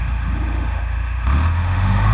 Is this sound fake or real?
fake